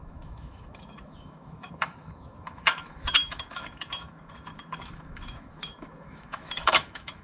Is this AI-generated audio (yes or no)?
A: yes